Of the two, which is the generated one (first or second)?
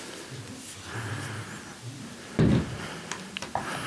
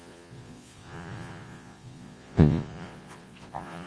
second